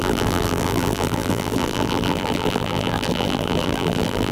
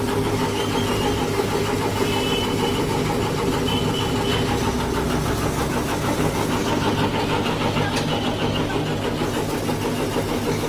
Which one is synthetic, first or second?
first